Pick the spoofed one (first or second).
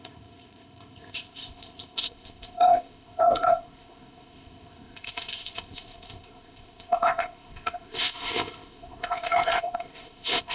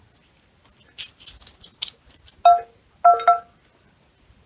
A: first